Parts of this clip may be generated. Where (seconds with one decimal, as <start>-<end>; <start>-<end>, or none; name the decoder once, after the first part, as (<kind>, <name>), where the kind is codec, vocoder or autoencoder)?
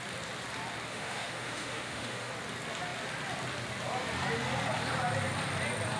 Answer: 0.9-2.3 (autoencoder, DAC-VAE)